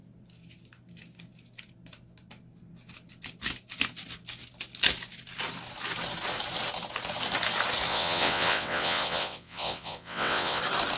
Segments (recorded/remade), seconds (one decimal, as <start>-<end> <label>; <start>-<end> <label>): 0.0-7.9 recorded; 7.9-10.6 remade; 10.6-11.0 recorded